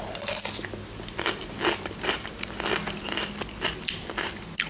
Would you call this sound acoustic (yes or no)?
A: yes